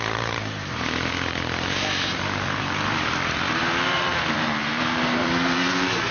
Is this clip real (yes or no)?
no